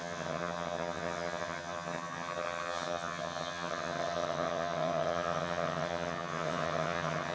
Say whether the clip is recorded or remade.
remade